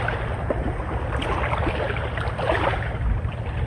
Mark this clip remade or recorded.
recorded